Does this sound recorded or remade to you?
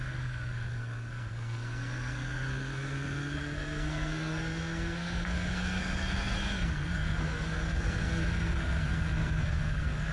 remade